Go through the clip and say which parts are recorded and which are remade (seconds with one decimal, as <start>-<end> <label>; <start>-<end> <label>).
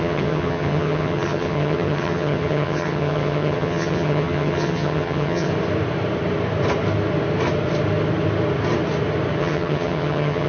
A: 0.0-5.5 remade; 5.5-9.4 recorded; 9.4-10.5 remade